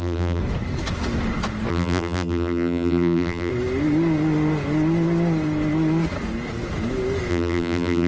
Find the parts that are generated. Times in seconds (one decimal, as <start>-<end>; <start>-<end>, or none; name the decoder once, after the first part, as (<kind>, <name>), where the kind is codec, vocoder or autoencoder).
0.0-0.4 (vocoder, BigVGAN v2); 1.7-3.5; 7.3-8.1